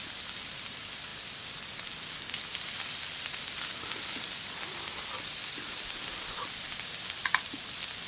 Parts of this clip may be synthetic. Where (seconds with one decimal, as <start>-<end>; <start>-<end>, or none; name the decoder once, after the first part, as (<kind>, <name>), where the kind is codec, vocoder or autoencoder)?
0.0-7.2 (vocoder, BigVGAN v2)

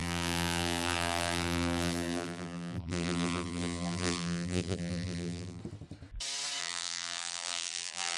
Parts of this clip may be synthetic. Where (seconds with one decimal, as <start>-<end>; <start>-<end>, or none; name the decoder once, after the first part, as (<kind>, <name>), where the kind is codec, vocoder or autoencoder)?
0.0-5.6 (vocoder, BigVGAN v2); 6.6-8.2

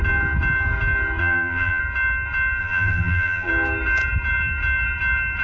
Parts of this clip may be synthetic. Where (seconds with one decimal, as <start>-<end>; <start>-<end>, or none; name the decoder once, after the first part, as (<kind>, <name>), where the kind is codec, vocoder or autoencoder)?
1.2-1.8 (vocoder, BigVGAN v2); 2.6-3.5

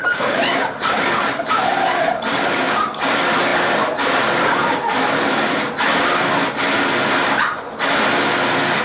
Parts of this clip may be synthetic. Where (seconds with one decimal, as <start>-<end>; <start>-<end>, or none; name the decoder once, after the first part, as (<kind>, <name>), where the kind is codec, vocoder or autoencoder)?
0.0-2.9 (vocoder, BigVGAN v2)

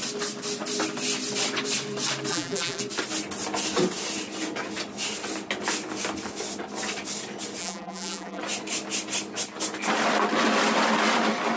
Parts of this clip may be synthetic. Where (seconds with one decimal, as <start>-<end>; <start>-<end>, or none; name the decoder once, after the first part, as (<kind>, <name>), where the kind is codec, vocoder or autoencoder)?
2.3-2.8 (vocoder, BigVGAN v2); 7.6-8.4

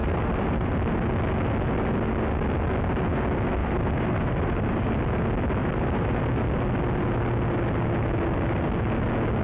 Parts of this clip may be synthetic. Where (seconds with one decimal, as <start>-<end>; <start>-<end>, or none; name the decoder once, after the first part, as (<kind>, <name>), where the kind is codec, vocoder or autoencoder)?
0.0-0.7 (vocoder, BigVGAN v2); 3.6-4.9; 5.6-6.2